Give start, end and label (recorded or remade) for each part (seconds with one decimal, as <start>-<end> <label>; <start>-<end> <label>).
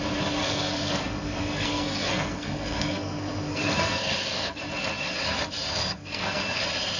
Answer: 0.0-0.4 recorded; 0.4-4.6 remade; 4.6-5.8 recorded; 5.8-6.6 remade; 6.6-7.0 recorded